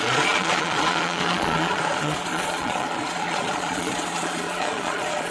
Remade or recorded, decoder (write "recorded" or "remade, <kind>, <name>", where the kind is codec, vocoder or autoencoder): remade, vocoder, Vocos